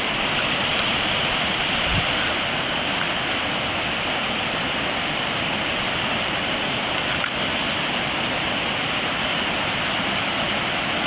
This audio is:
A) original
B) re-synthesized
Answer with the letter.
B